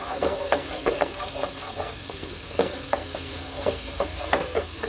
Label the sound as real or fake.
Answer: fake